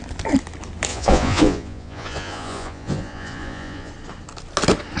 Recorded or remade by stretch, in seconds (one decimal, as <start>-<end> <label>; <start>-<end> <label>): 0.0-0.9 recorded; 0.9-3.9 remade; 3.9-5.0 recorded